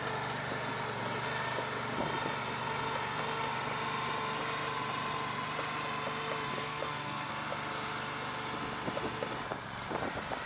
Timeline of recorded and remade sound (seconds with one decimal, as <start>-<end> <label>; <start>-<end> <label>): 0.0-6.5 recorded; 6.5-7.3 remade; 7.3-10.5 recorded